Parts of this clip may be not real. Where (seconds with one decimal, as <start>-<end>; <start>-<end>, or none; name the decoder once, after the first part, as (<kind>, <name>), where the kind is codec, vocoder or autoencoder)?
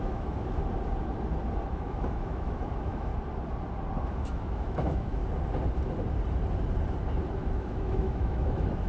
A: 0.0-0.6 (autoencoder, DAC-VAE); 1.7-3.1; 4.0-5.2; 7.3-8.9